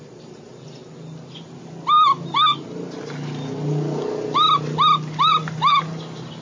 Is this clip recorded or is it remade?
recorded